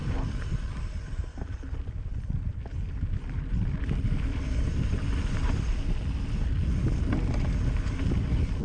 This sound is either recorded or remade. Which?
recorded